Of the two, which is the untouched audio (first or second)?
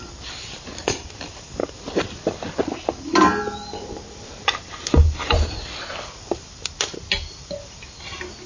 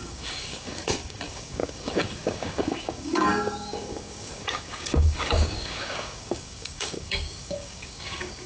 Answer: first